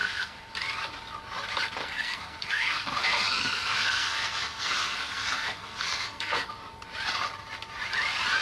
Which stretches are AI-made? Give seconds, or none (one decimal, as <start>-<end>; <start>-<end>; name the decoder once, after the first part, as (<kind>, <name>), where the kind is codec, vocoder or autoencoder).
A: 0.0-0.5 (codec, SNAC); 1.8-6.5